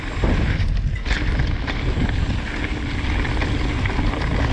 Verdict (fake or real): real